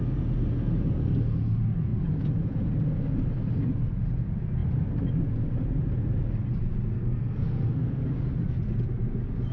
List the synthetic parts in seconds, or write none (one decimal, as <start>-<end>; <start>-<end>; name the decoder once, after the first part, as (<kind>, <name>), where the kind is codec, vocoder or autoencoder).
6.9-8.0 (codec, SNAC)